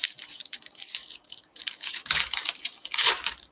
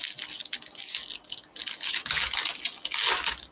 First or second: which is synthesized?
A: first